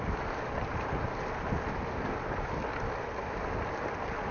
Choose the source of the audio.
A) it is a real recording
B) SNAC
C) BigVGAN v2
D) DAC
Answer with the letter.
A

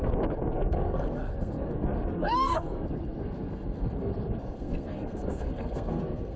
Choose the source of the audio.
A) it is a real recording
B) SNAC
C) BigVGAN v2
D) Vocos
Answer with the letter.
B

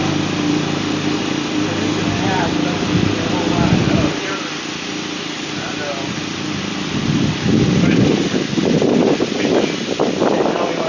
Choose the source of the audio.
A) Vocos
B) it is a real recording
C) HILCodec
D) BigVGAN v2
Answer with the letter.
D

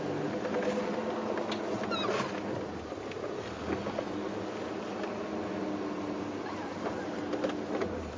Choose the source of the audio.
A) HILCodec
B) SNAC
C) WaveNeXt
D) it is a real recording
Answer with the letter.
D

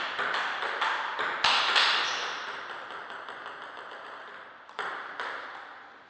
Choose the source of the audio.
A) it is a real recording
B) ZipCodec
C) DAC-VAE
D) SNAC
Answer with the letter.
A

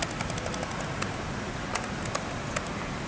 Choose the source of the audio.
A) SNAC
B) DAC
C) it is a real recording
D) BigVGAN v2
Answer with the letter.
C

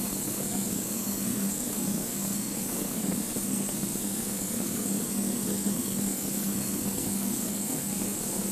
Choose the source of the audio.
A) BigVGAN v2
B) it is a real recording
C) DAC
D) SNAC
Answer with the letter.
D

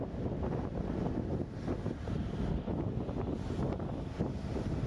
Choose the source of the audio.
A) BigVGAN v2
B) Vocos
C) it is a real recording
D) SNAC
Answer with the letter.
C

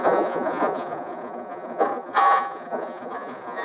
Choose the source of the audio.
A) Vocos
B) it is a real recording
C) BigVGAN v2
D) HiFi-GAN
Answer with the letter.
A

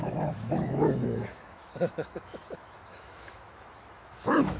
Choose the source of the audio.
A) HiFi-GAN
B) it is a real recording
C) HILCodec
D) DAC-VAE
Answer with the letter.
D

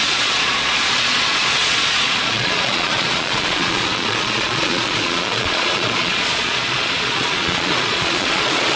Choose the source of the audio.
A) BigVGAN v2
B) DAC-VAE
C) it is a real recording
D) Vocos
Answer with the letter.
D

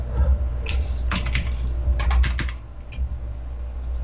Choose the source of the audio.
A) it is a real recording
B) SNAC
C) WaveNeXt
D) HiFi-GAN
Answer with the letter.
A